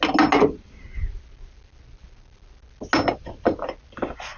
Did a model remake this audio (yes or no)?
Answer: no